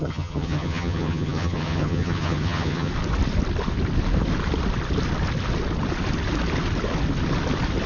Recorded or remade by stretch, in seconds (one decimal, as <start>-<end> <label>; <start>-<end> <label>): 0.0-2.9 remade; 2.9-7.9 recorded